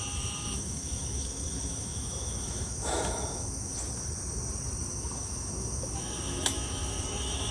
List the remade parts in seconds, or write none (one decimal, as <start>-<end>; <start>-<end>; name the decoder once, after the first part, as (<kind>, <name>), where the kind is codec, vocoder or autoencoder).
0.0-3.7 (autoencoder, DAC-VAE); 4.9-7.5